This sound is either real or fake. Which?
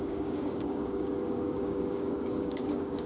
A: fake